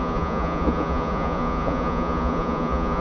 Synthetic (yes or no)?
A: yes